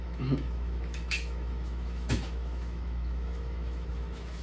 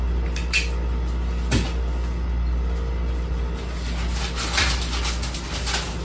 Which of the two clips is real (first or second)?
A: second